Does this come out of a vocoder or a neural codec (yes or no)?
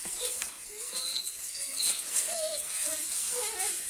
yes